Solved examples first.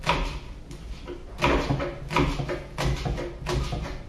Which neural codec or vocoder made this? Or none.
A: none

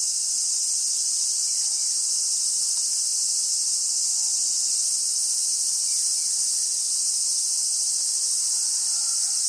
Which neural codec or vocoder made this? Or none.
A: vocoder, BigVGAN v2